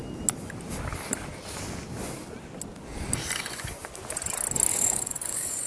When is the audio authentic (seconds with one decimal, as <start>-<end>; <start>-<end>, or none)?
0.0-3.4; 3.8-4.7